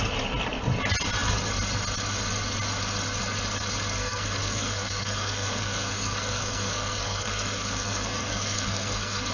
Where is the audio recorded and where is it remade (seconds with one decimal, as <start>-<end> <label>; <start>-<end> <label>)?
0.0-4.0 recorded; 4.0-9.3 remade